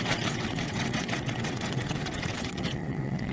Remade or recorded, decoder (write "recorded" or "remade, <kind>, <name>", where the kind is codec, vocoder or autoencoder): remade, vocoder, WaveNeXt